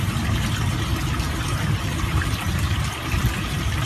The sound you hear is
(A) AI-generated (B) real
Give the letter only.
A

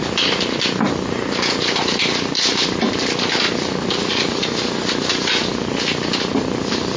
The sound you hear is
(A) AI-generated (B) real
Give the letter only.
B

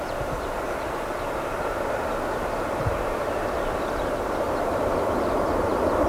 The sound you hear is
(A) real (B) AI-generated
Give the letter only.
B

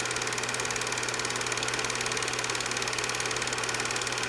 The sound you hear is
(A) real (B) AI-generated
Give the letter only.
A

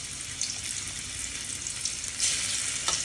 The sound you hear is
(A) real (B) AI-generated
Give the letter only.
A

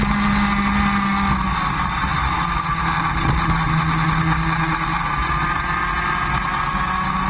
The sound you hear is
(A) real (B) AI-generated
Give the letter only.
A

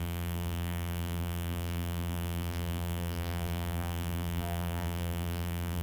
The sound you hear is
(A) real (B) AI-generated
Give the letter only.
B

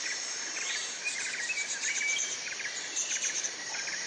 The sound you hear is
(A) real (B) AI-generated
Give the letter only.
B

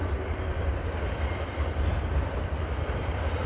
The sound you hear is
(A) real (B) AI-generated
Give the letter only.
B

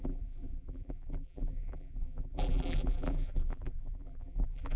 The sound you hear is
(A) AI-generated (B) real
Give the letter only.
A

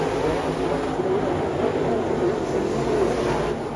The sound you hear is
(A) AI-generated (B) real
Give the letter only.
B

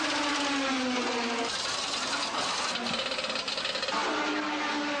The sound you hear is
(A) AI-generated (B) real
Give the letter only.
B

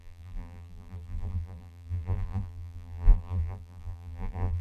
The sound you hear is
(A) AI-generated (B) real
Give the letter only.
A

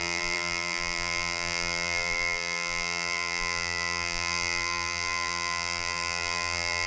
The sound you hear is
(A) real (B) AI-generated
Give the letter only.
B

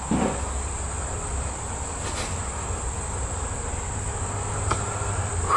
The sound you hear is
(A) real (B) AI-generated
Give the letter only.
A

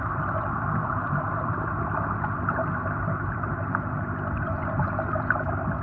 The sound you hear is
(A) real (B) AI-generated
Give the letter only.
B